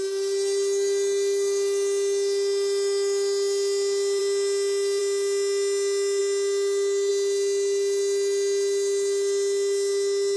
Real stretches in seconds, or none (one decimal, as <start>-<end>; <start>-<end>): 0.0-10.4